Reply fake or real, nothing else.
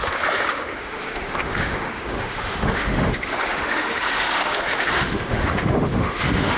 fake